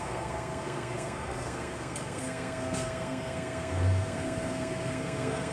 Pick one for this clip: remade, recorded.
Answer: remade